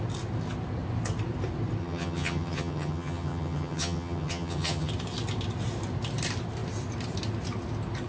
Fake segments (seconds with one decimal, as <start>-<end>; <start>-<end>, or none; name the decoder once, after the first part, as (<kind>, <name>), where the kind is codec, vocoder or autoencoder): 1.8-4.9 (vocoder, HiFi-GAN)